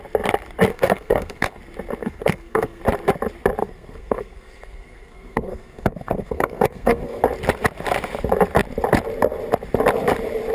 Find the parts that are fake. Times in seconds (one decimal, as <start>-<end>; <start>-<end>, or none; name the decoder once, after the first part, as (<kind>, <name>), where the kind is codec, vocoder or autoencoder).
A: 0.7-1.6 (codec, SNAC); 2.0-2.8; 3.6-7.2